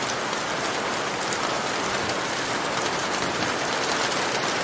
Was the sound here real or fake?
real